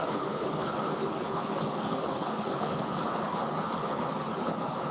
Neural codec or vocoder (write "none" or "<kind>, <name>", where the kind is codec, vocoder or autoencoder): codec, HILCodec